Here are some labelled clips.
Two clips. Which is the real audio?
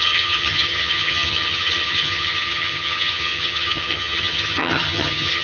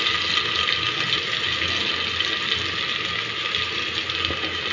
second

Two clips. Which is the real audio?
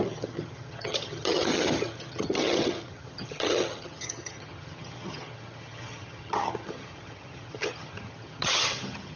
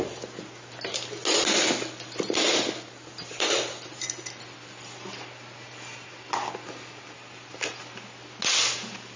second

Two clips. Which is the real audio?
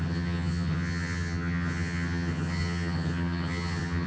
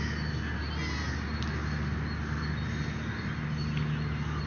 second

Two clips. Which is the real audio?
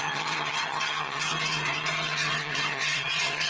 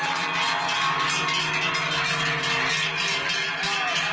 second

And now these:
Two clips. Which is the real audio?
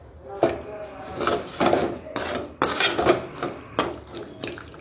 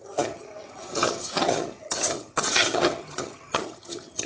first